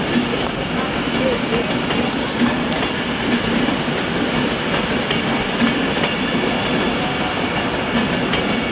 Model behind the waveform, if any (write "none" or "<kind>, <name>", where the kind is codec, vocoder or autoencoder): none